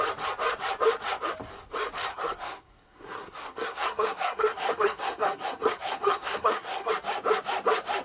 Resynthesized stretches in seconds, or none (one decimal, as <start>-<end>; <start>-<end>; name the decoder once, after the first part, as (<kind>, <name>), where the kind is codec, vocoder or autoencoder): 2.1-6.9 (codec, SNAC)